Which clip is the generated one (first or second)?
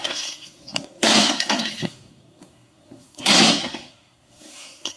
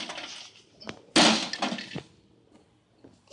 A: first